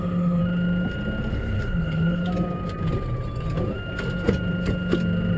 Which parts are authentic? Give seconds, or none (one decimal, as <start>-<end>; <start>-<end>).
0.4-1.3; 2.2-5.4